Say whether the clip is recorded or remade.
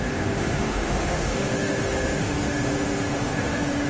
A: remade